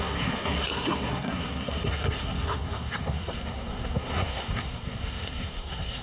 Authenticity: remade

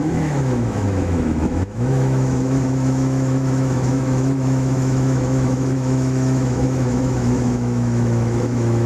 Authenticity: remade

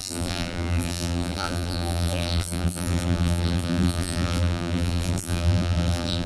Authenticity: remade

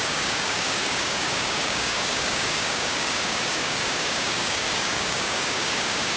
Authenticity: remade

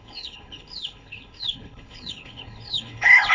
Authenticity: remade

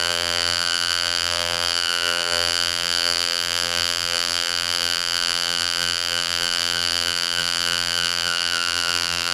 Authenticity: remade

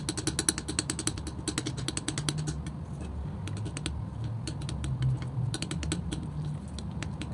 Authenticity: recorded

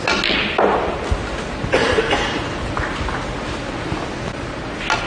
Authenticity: recorded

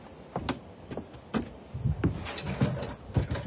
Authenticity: recorded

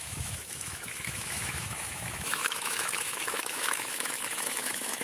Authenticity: remade